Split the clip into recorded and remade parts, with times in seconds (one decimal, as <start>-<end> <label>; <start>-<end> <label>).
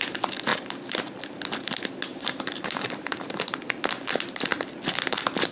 0.0-0.5 recorded; 0.5-1.4 remade; 1.4-2.1 recorded; 2.1-3.2 remade; 3.2-5.5 recorded